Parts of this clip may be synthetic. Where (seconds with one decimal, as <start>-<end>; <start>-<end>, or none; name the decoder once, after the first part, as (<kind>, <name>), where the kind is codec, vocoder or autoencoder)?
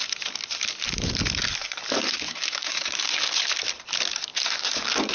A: 1.6-3.5 (codec, DAC); 4.3-5.1